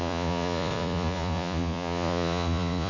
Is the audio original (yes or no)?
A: no